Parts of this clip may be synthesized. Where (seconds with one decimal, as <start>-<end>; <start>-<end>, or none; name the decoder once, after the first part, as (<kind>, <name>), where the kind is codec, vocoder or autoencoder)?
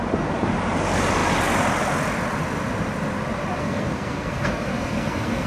3.6-5.5 (codec, SNAC)